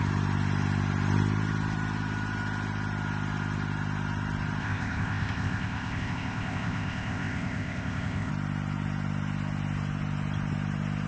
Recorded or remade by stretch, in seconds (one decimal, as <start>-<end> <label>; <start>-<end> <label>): 0.0-4.6 recorded; 4.6-8.3 remade; 8.3-11.1 recorded